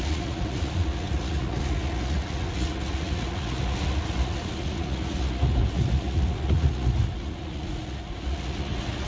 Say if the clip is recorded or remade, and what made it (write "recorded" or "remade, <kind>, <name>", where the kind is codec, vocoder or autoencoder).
remade, vocoder, Vocos